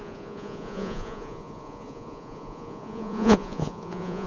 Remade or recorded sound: remade